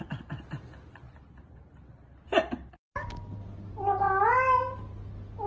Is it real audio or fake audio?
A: real